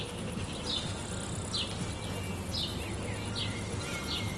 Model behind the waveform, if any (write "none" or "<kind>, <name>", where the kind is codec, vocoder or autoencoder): none